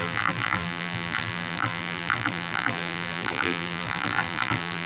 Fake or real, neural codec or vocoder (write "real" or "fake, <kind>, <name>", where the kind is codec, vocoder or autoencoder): fake, vocoder, BigVGAN v2